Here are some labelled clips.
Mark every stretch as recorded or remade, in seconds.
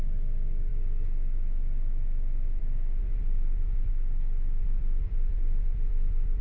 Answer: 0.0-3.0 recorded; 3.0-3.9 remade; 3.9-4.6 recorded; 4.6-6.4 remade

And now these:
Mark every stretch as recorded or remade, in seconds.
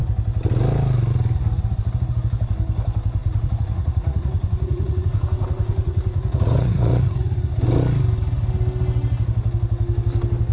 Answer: 0.0-3.2 recorded; 3.2-7.6 remade; 7.6-10.5 recorded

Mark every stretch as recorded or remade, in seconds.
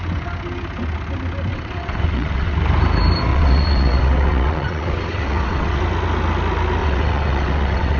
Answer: 0.0-1.5 recorded; 1.5-2.5 remade; 2.5-3.3 recorded; 3.3-5.8 remade; 5.8-6.8 recorded; 6.8-8.0 remade